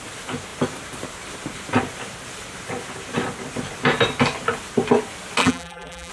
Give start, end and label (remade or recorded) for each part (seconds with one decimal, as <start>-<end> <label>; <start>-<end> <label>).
0.0-5.4 recorded; 5.4-6.1 remade